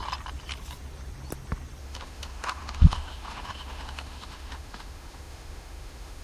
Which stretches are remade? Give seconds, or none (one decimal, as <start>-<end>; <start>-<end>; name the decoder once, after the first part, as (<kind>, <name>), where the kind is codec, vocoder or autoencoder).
1.8-6.2 (autoencoder, DAC-VAE)